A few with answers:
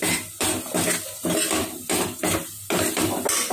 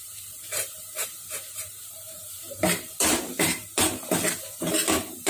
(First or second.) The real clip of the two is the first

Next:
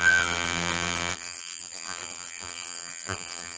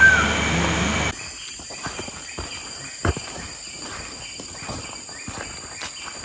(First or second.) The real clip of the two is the second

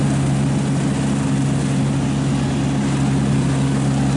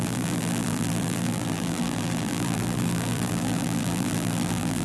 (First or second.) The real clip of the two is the first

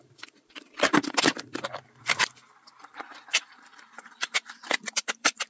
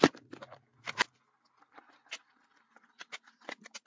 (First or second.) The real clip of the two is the second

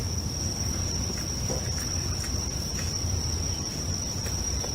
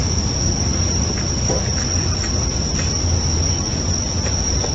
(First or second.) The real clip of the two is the second